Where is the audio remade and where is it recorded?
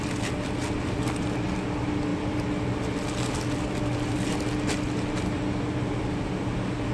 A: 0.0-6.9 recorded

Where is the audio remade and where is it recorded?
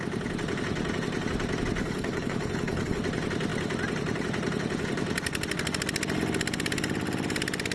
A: 0.0-1.8 recorded; 1.8-3.0 remade; 3.0-7.7 recorded